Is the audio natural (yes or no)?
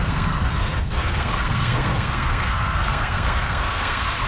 no